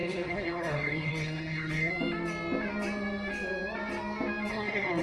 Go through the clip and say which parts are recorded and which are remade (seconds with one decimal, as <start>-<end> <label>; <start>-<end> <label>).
0.0-1.9 remade; 1.9-4.5 recorded; 4.5-5.0 remade